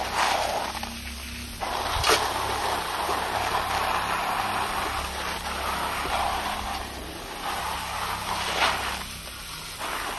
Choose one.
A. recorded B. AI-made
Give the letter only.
A